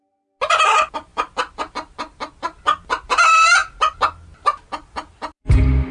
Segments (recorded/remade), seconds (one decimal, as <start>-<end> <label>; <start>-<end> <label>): 0.0-5.9 recorded